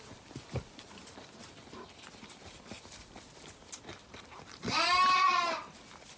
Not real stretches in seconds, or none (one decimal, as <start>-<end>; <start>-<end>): none